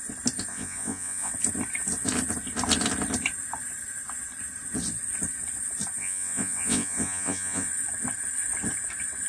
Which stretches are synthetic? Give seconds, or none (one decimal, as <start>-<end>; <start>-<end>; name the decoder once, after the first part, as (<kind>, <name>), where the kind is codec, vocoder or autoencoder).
0.5-1.3 (vocoder, Vocos); 6.0-7.7